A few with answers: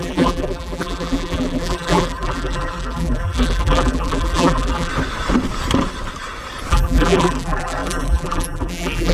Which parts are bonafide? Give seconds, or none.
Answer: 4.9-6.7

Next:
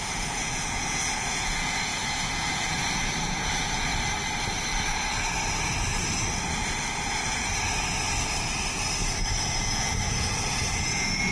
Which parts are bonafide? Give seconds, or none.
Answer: 3.9-7.0; 7.5-9.6

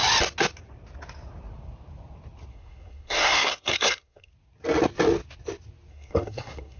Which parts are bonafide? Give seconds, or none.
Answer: 0.0-2.5; 4.3-5.9

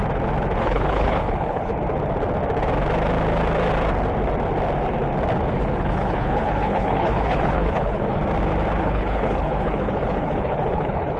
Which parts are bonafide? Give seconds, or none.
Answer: 0.0-0.6; 1.7-5.5; 8.2-8.8

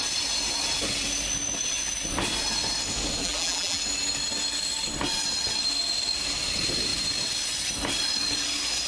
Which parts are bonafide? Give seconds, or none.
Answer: 0.0-3.2; 3.8-8.9

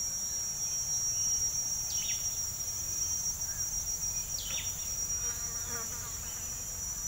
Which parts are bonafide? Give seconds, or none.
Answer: 0.0-1.2; 5.1-5.9; 6.5-7.1

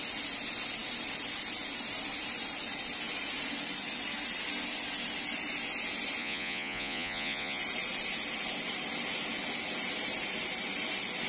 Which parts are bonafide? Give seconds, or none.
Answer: 0.0-6.2; 7.6-11.3

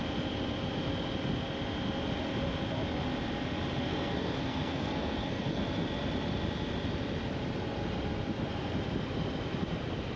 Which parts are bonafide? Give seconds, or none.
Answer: 0.0-3.8; 5.6-10.2